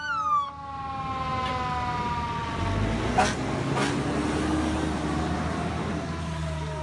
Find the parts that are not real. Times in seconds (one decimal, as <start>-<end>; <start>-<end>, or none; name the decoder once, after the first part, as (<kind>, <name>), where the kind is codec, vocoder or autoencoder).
none